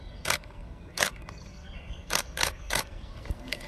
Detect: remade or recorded remade